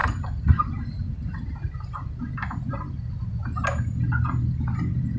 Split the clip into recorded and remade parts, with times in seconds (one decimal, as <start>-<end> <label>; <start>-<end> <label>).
0.0-3.1 remade; 3.1-5.2 recorded